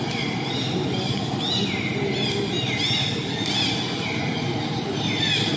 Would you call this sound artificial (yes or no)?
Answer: no